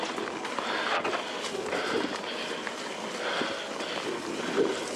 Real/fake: real